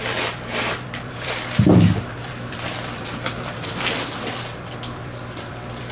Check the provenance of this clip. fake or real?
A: fake